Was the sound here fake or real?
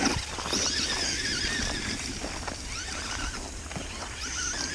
real